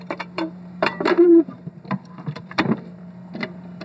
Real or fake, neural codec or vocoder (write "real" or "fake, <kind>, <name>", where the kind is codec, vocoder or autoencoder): fake, vocoder, BigVGAN v2